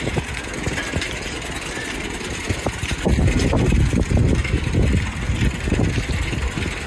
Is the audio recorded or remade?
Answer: recorded